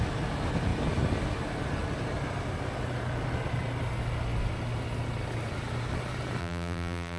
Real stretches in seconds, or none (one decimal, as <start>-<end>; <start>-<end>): 0.0-6.4